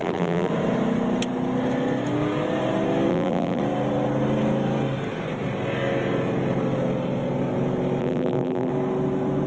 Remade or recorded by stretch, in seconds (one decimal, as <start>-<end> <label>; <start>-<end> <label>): 0.0-0.5 remade; 0.5-3.1 recorded; 3.1-3.6 remade; 3.6-8.0 recorded; 8.0-8.7 remade; 8.7-9.5 recorded